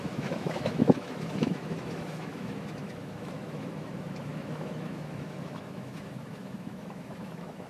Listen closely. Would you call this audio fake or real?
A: fake